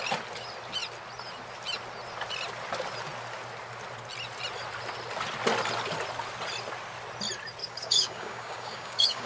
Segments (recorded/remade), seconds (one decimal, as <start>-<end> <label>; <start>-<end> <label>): 0.0-7.6 recorded; 7.6-9.3 remade